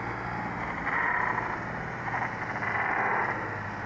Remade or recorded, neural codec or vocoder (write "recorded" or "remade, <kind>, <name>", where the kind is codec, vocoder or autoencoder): recorded